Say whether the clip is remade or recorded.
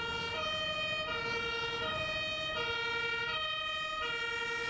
remade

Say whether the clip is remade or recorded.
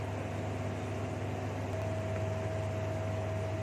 recorded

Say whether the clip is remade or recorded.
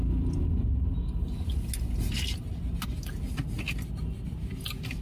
recorded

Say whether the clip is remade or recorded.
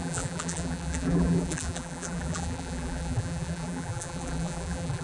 remade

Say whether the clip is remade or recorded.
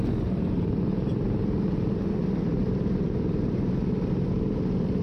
recorded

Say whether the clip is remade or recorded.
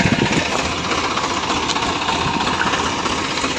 recorded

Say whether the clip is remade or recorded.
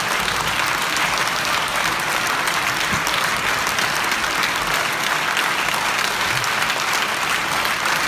recorded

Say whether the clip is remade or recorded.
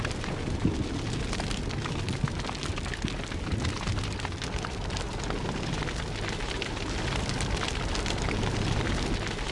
recorded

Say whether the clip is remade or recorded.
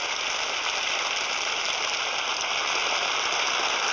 recorded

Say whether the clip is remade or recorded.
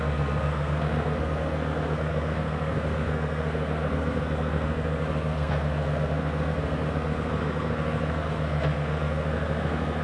remade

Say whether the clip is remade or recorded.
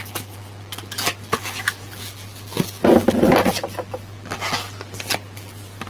remade